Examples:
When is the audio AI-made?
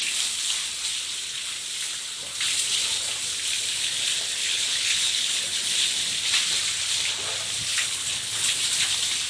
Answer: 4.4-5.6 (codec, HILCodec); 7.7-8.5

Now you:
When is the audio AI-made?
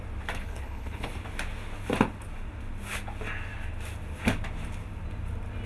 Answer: 0.4-1.1 (codec, HILCodec)